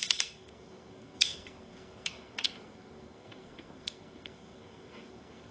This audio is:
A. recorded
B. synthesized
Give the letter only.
B